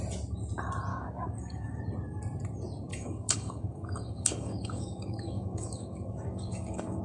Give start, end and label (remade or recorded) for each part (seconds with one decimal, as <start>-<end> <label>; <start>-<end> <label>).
0.0-0.9 recorded; 0.9-1.8 remade; 1.8-2.9 recorded; 2.9-7.0 remade